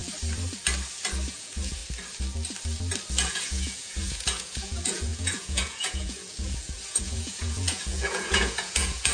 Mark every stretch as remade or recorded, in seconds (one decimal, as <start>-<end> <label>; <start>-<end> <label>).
0.0-1.3 recorded; 1.3-1.8 remade; 1.8-3.3 recorded; 3.3-9.1 remade